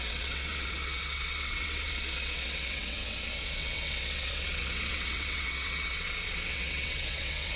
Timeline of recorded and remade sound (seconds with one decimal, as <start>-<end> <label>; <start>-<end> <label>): 0.0-7.6 remade

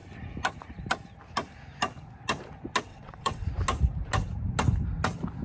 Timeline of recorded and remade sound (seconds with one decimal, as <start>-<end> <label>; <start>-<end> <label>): 0.0-2.9 recorded; 2.9-3.5 remade; 3.5-5.4 recorded

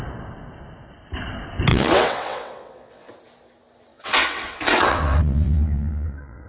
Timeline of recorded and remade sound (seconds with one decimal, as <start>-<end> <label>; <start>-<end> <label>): 0.0-1.7 recorded; 1.7-3.1 remade; 3.1-3.9 recorded; 3.9-6.5 remade

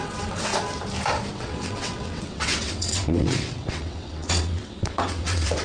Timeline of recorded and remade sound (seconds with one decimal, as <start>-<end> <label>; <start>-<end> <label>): 0.0-0.5 remade; 0.5-1.3 recorded; 1.3-5.6 remade